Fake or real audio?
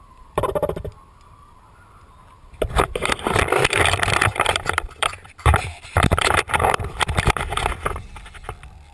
fake